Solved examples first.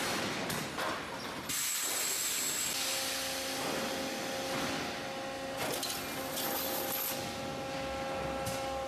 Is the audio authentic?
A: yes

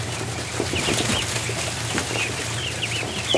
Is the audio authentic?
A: yes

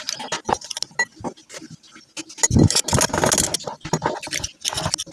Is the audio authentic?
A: yes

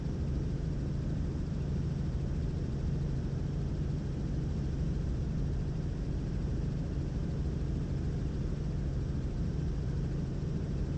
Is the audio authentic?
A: no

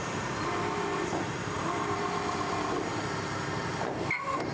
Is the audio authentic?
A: no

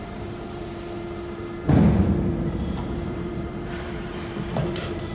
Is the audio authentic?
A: no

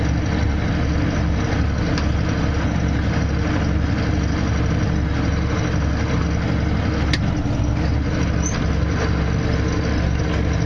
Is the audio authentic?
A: yes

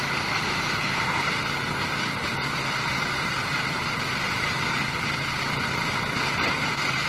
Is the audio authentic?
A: no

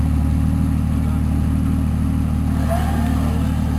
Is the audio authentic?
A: yes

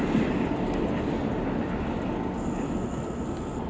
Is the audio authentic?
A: yes